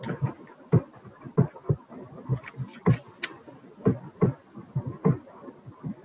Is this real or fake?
real